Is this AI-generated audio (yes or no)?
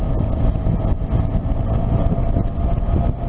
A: no